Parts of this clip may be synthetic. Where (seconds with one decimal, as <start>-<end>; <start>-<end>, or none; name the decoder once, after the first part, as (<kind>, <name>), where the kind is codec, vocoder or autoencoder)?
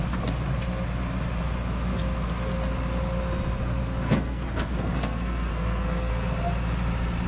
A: 3.8-6.1 (codec, SNAC)